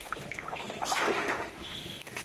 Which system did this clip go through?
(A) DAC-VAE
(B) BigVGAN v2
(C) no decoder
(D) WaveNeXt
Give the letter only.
A